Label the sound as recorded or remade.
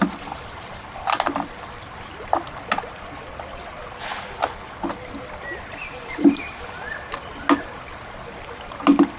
recorded